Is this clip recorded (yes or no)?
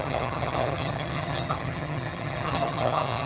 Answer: no